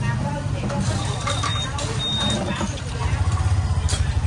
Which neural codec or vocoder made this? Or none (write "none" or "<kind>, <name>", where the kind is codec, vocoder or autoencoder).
none